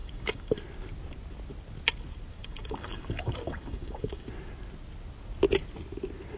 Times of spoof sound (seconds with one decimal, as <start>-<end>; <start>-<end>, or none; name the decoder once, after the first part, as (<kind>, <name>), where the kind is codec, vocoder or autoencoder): 0.0-0.5 (codec, DAC); 2.4-4.3